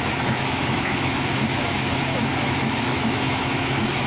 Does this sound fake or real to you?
fake